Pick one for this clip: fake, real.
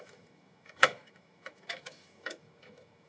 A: fake